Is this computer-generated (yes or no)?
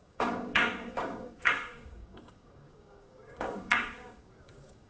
yes